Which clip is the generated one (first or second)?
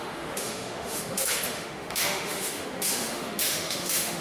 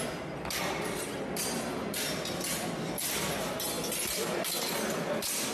first